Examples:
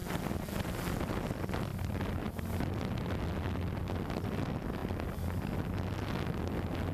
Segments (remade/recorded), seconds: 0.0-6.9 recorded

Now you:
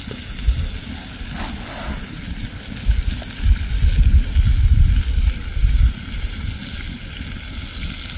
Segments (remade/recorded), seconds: 0.0-8.2 recorded

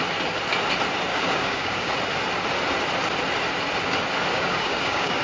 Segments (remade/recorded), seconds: 0.0-1.1 recorded; 1.1-1.9 remade; 1.9-4.3 recorded; 4.3-5.2 remade

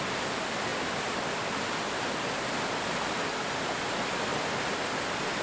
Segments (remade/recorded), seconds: 0.0-0.7 recorded; 0.7-2.9 remade; 2.9-4.3 recorded; 4.3-4.9 remade; 4.9-5.4 recorded